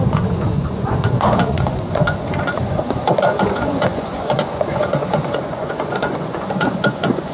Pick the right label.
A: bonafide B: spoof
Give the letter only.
B